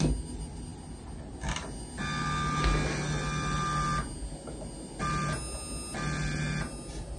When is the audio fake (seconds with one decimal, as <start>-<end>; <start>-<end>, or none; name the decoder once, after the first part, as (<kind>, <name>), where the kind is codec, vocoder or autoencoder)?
none